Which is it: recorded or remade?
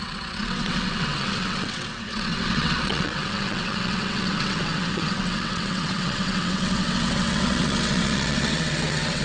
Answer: remade